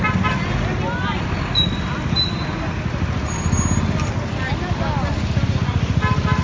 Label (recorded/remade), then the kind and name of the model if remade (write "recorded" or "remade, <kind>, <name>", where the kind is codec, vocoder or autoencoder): recorded